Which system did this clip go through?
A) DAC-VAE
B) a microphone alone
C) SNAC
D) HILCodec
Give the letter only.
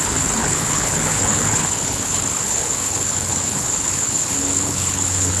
D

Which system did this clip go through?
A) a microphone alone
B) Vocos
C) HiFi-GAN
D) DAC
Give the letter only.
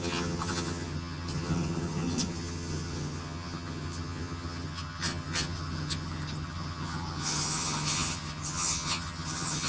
C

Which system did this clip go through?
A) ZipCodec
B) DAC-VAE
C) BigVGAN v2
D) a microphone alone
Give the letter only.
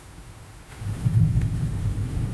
B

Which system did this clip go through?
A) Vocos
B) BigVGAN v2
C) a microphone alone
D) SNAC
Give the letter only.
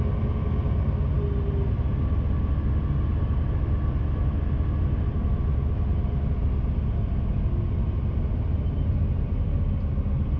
C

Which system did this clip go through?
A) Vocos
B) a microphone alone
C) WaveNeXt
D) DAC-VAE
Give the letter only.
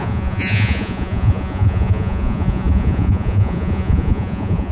A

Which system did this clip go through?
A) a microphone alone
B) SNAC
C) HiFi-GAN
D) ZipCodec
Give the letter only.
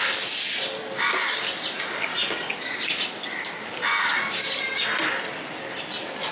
A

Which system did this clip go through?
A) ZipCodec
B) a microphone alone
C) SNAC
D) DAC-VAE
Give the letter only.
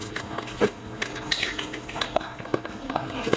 C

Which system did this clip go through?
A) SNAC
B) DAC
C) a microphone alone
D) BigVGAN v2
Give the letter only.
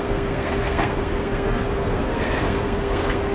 A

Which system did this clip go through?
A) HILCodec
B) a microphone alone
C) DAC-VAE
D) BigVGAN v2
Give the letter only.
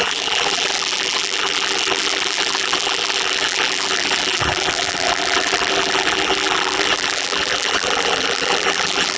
D